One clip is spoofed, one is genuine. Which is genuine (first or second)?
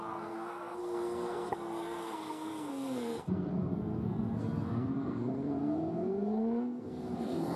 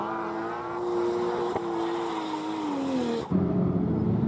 second